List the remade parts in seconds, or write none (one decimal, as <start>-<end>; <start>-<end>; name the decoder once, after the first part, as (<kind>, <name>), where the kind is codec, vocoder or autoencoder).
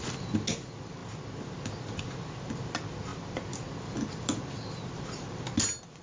none